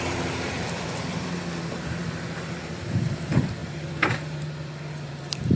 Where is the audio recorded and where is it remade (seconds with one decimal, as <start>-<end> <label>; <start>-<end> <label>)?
0.0-2.0 remade; 2.0-2.6 recorded; 2.6-5.6 remade